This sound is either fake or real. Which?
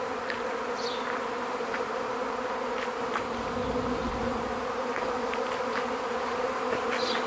fake